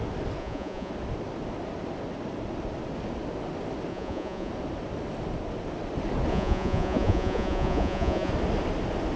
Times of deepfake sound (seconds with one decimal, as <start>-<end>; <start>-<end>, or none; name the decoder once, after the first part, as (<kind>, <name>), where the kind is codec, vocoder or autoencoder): 0.4-0.9 (vocoder, Vocos); 3.9-4.5; 6.3-8.3